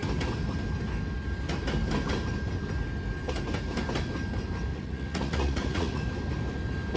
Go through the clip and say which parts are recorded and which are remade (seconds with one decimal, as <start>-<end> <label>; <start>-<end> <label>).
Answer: 0.0-4.7 recorded; 4.7-6.0 remade; 6.0-7.0 recorded